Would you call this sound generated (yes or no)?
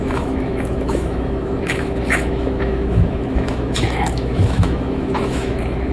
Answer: yes